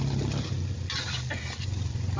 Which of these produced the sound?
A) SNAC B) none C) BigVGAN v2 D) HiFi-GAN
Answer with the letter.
B